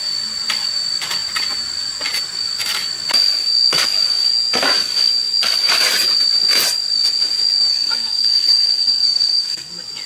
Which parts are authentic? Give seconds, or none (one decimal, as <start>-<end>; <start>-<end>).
0.0-7.7; 9.7-10.1